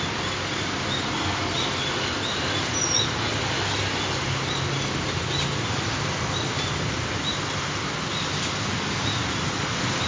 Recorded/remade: recorded